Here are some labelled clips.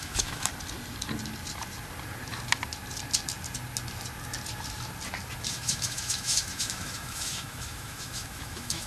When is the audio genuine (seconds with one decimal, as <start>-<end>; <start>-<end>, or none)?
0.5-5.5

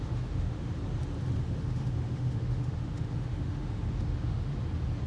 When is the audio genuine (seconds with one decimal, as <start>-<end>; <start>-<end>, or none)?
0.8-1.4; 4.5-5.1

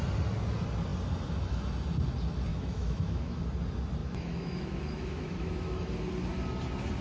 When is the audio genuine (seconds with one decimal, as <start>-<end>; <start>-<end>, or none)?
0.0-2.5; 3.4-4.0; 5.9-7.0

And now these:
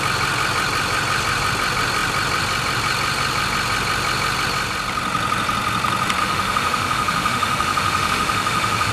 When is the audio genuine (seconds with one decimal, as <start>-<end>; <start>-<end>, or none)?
0.0-6.2

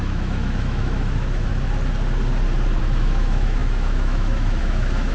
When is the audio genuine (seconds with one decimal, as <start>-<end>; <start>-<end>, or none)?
1.5-2.8

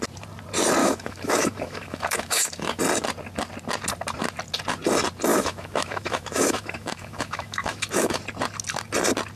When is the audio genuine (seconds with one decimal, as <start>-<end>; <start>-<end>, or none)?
0.0-0.8; 2.8-5.3; 8.2-9.4